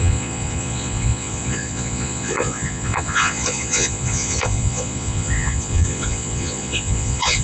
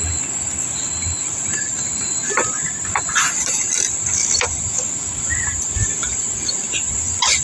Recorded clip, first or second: second